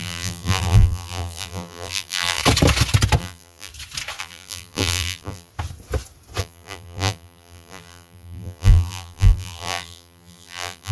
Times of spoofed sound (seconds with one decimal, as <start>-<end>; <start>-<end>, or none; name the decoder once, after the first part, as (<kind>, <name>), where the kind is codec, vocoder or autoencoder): 0.0-2.4 (vocoder, BigVGAN v2); 3.2-3.7; 4.2-5.5; 6.4-10.9